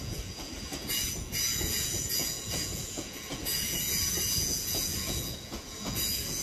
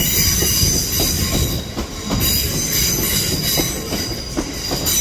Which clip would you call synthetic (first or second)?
first